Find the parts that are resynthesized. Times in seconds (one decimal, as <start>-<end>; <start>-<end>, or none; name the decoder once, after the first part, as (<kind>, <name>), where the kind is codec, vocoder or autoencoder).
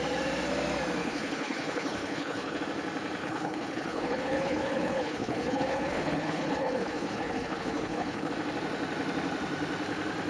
1.0-2.6 (codec, HILCodec); 3.2-8.3